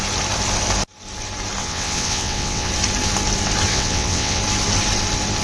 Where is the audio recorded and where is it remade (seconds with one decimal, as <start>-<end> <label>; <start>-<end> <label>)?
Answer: 0.0-1.6 recorded; 1.6-2.7 remade; 2.7-3.7 recorded; 3.7-4.4 remade; 4.4-5.4 recorded